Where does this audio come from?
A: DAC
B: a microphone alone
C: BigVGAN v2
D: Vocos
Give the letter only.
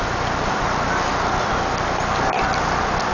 B